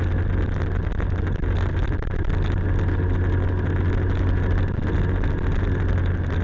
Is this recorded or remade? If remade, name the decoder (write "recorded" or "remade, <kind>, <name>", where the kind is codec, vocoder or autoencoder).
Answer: recorded